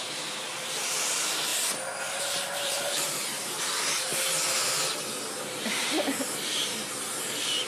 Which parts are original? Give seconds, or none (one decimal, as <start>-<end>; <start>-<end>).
1.5-2.2; 4.1-7.7